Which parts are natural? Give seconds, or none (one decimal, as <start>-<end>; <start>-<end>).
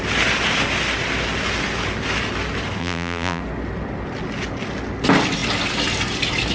0.0-2.8; 3.4-6.5